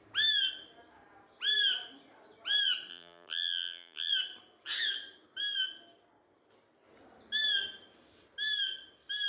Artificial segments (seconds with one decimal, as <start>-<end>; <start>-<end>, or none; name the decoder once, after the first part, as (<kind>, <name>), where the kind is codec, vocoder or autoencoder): 2.9-4.1 (vocoder, BigVGAN v2)